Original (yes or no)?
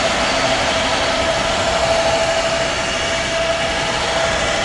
yes